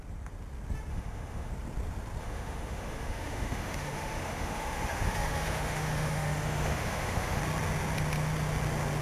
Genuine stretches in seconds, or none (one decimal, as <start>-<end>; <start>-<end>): 0.0-0.9; 1.5-2.2; 7.4-9.0